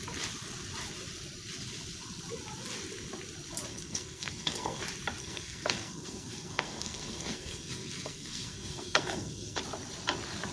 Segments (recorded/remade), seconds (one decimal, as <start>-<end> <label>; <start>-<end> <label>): 0.0-3.7 recorded; 3.7-4.8 remade; 4.8-5.2 recorded; 5.2-9.6 remade; 9.6-10.5 recorded